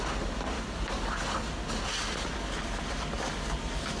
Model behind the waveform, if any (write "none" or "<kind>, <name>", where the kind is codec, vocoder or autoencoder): none